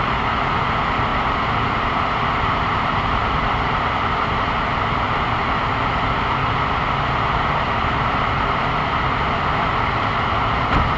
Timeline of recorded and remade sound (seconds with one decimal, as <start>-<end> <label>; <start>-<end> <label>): 0.0-1.1 recorded; 1.1-5.2 remade; 5.2-11.0 recorded